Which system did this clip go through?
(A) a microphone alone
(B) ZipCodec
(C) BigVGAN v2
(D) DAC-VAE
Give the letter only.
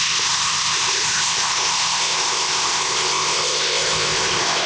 B